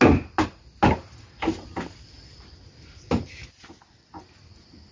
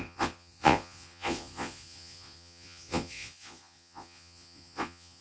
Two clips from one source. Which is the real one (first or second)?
first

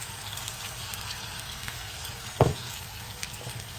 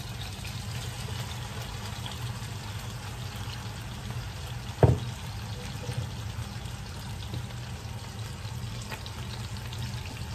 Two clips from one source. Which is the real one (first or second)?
second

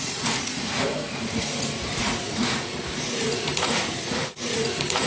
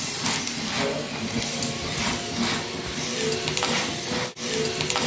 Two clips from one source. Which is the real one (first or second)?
second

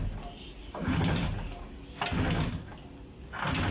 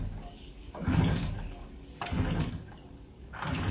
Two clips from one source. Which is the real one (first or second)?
first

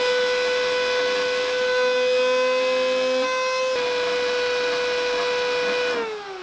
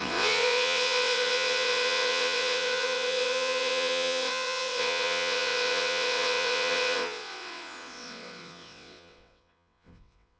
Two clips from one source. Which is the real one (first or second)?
first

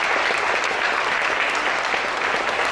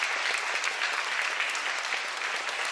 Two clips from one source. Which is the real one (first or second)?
second